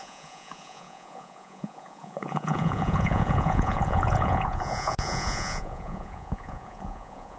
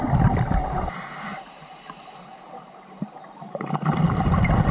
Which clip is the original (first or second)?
second